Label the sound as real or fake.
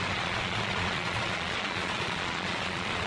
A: fake